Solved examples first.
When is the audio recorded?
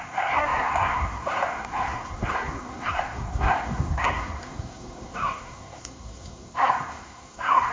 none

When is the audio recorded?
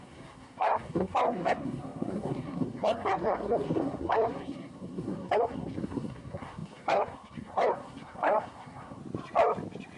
9.0-10.0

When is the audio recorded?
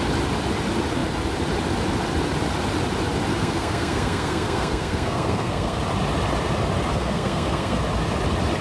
0.0-3.3; 5.8-6.9; 7.8-8.6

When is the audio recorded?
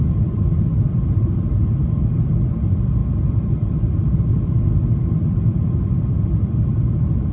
0.0-7.3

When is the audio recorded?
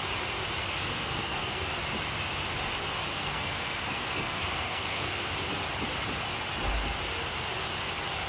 0.0-0.6; 1.7-3.1; 5.3-8.3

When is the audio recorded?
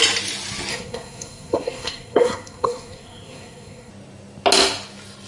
0.0-0.7; 3.9-5.3